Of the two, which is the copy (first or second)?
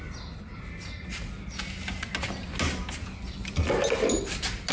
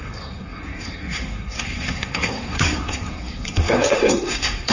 second